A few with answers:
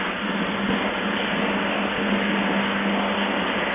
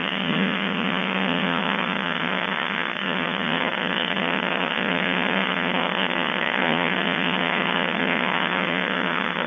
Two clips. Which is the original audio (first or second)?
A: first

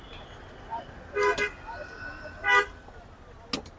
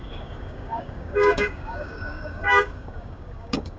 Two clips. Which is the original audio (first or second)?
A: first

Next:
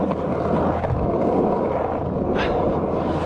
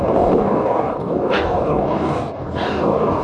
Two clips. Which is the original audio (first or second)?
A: first